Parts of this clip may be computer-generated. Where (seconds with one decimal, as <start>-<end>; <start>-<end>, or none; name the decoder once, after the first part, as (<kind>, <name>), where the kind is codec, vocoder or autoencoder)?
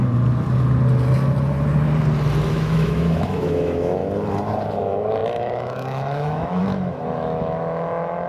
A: 2.5-4.0 (autoencoder, DAC-VAE); 4.8-8.3